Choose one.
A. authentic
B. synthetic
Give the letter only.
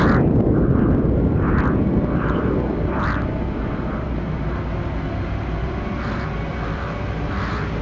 A